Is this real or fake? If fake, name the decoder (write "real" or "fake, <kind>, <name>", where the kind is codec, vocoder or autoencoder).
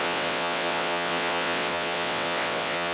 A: fake, vocoder, WaveNeXt